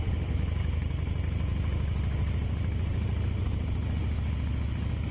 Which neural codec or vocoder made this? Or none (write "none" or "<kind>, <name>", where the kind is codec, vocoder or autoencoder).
none